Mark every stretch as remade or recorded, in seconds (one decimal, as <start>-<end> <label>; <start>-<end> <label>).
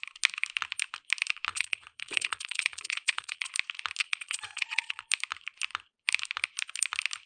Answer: 0.0-1.5 recorded; 1.5-3.5 remade; 3.5-4.0 recorded; 4.0-5.0 remade; 5.0-7.3 recorded